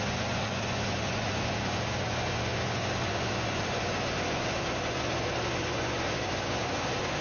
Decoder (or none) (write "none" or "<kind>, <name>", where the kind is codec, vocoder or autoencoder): vocoder, Vocos